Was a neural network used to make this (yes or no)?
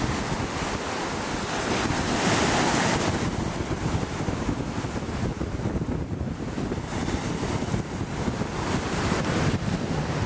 no